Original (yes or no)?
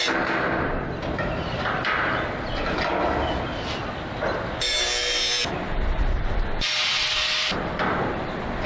yes